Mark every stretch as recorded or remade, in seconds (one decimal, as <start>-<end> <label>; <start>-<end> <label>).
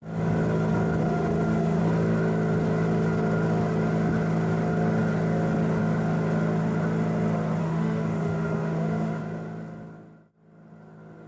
0.0-1.0 recorded; 1.0-1.8 remade; 1.8-7.6 recorded; 7.6-9.2 remade; 9.2-11.3 recorded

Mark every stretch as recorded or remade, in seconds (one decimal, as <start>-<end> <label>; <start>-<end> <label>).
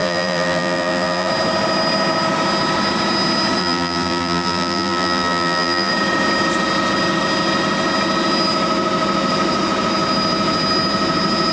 0.0-1.3 remade; 1.3-3.6 recorded; 3.6-5.9 remade; 5.9-11.5 recorded